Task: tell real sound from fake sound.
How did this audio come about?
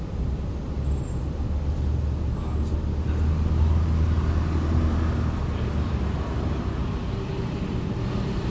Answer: real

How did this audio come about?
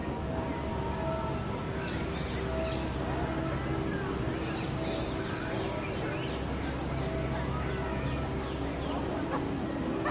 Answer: real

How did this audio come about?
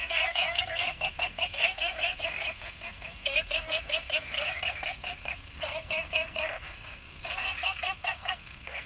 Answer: fake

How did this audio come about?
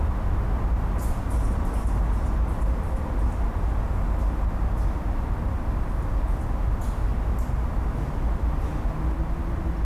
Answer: real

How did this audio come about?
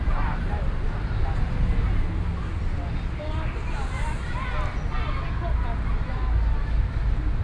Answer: real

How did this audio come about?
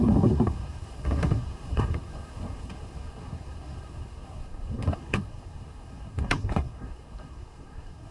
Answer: fake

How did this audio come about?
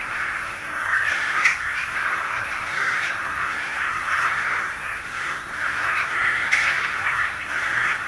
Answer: fake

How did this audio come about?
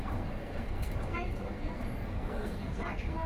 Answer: fake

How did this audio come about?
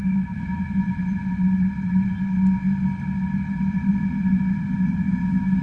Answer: real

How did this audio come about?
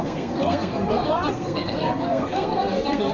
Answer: fake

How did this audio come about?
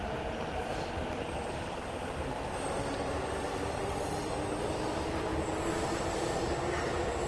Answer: real